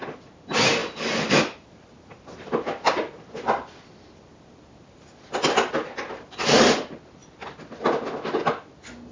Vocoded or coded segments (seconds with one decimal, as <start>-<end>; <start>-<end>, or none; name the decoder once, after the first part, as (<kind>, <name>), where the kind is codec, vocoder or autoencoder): 0.8-5.7 (vocoder, BigVGAN v2)